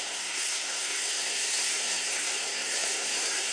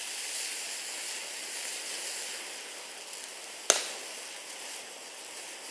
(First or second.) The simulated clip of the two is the first